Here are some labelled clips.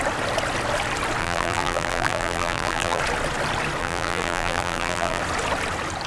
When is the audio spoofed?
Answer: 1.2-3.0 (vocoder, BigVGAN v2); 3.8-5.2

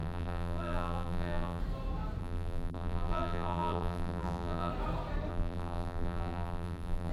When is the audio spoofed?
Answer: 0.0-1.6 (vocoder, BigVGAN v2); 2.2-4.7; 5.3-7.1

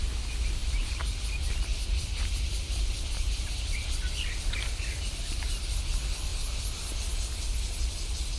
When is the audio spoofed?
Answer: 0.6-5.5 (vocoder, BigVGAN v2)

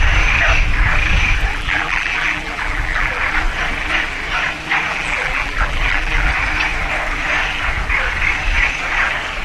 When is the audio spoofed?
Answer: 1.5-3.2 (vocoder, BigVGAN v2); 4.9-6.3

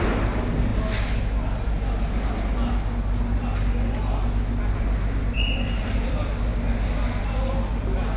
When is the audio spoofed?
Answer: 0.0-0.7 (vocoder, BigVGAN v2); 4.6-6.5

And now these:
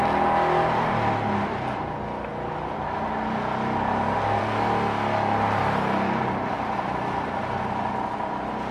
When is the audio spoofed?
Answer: none